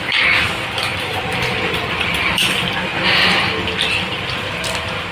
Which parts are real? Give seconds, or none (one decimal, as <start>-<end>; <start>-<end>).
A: none